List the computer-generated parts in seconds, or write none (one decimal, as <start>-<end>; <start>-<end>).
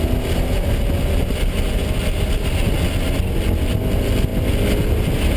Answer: none